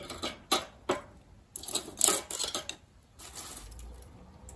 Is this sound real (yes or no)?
yes